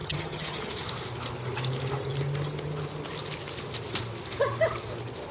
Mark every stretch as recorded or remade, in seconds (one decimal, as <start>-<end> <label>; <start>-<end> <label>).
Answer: 0.0-0.7 remade; 0.7-5.3 recorded